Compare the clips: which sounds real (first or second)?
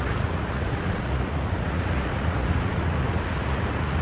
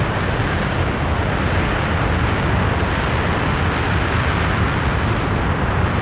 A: second